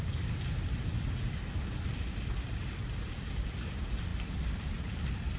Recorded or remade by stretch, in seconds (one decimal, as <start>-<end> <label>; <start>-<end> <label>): 0.0-4.1 recorded; 4.1-4.7 remade; 4.7-5.4 recorded